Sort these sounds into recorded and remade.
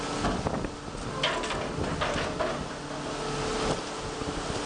recorded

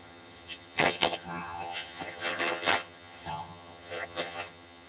remade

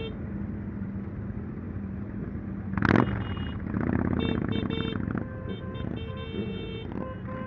recorded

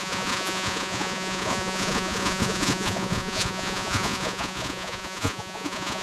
remade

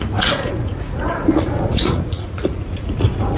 remade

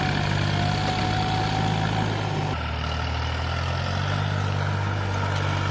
recorded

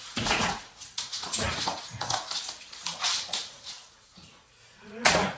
remade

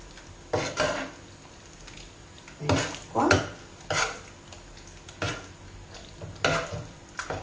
recorded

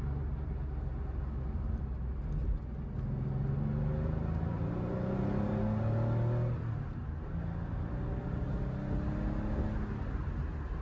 recorded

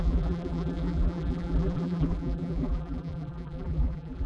remade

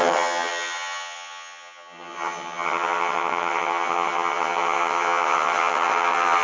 remade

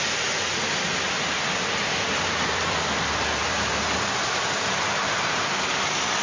recorded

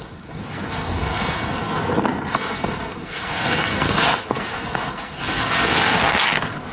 remade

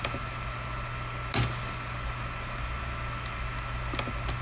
recorded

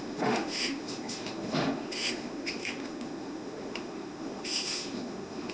remade